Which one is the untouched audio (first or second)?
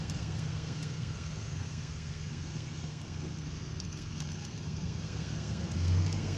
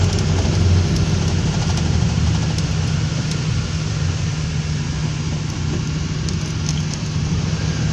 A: second